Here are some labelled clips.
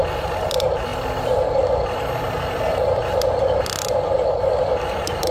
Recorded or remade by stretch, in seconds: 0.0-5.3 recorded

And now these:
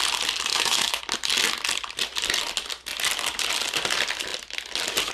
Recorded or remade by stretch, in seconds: 0.0-0.5 recorded; 0.5-1.0 remade; 1.0-5.1 recorded

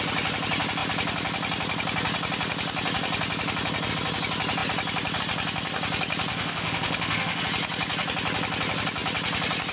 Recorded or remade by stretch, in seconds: 0.0-6.3 recorded; 6.3-7.4 remade; 7.4-9.7 recorded

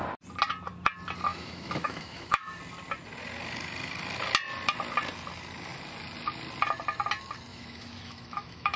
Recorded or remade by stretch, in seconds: 0.0-1.3 recorded; 1.3-2.6 remade; 2.6-7.5 recorded; 7.5-8.8 remade